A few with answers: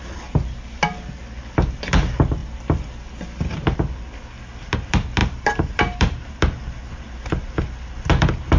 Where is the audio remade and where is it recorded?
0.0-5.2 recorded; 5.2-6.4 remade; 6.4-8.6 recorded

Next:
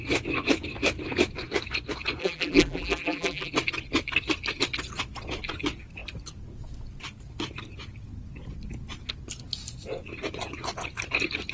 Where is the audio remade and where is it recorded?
0.0-2.2 recorded; 2.2-3.5 remade; 3.5-11.5 recorded